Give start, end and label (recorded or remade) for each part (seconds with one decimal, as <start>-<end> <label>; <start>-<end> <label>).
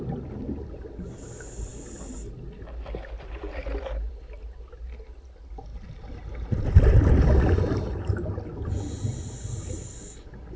0.0-10.6 recorded